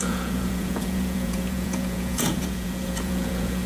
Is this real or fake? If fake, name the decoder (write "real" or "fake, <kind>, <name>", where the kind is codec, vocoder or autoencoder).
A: fake, vocoder, Vocos